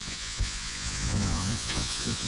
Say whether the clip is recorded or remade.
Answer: remade